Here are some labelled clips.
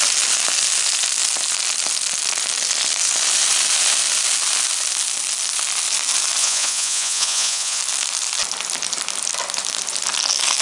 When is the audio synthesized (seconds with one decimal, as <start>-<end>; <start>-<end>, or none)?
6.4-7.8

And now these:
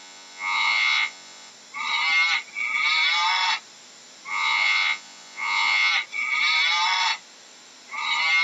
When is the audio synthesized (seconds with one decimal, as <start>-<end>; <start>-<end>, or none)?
0.0-1.5; 4.3-5.9

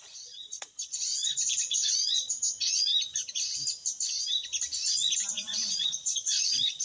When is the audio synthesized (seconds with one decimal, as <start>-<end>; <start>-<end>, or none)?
0.0-2.9; 5.3-6.8

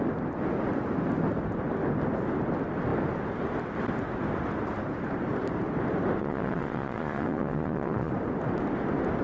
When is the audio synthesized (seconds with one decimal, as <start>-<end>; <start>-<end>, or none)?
6.2-8.1

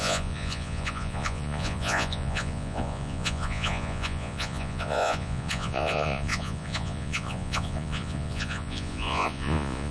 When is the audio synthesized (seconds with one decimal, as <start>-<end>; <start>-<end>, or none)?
0.0-9.9